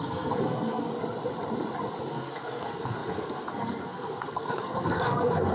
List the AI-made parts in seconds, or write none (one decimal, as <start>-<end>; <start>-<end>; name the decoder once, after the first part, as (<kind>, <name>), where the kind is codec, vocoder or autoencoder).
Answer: 0.0-0.9 (codec, SNAC); 2.1-5.5